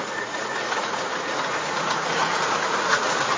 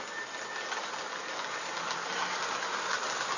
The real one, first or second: second